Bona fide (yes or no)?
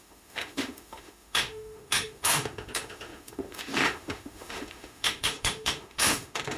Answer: no